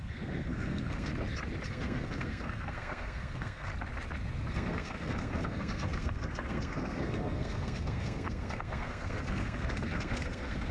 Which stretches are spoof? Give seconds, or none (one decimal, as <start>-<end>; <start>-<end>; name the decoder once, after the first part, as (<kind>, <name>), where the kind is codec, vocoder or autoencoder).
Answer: 0.0-1.1 (codec, SNAC); 1.7-3.7; 4.5-10.7

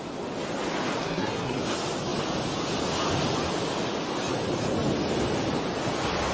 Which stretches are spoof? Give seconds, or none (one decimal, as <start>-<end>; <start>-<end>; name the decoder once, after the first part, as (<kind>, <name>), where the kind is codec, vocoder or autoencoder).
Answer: 1.0-1.6 (codec, SNAC)

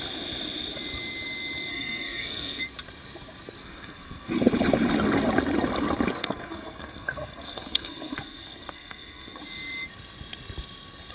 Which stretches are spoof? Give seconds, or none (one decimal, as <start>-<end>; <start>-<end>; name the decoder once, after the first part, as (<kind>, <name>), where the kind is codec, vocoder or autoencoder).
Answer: 1.7-2.6 (codec, SNAC); 3.6-4.3; 6.2-9.4